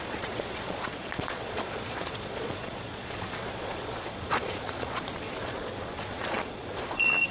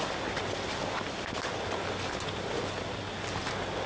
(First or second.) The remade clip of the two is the first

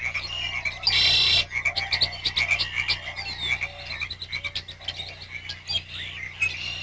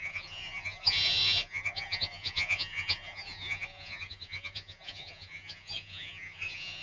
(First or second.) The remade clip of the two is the second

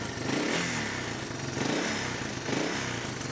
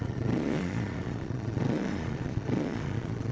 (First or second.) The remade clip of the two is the second